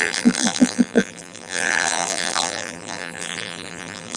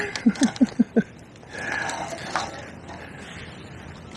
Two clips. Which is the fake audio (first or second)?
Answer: first